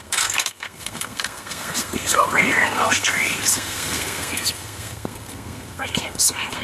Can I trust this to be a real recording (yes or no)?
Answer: no